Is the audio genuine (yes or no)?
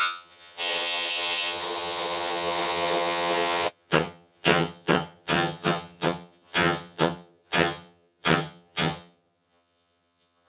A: no